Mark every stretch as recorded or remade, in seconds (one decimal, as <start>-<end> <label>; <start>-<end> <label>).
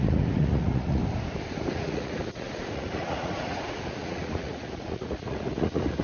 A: 0.0-1.0 remade; 1.0-1.7 recorded; 1.7-6.0 remade